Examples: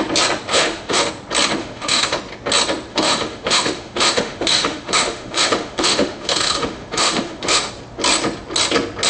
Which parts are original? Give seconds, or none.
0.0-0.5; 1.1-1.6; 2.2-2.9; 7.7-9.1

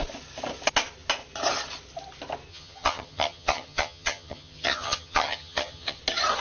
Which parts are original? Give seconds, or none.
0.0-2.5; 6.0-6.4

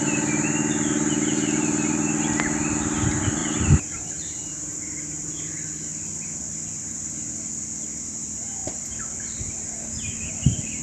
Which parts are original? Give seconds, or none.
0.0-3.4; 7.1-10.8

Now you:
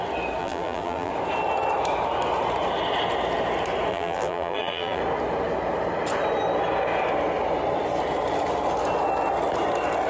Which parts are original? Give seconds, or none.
0.0-0.4; 1.1-3.9; 5.0-10.1

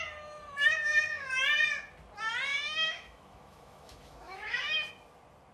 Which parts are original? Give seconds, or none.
0.0-0.6; 1.3-2.5; 4.9-5.5

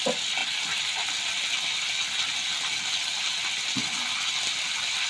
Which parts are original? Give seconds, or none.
0.0-5.1